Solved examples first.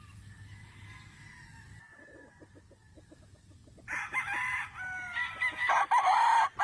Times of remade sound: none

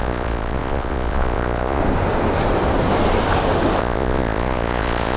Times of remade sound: 0.0-1.8 (vocoder, Vocos); 3.8-5.2

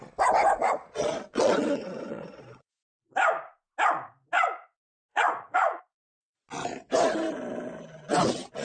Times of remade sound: 0.6-2.7 (vocoder, Vocos); 5.1-5.8

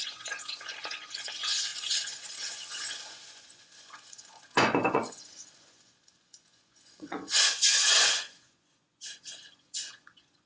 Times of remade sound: 0.0-10.5 (vocoder, Vocos)

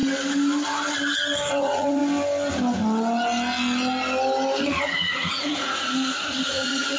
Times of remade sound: 1.5-2.0 (vocoder, Vocos); 4.6-7.0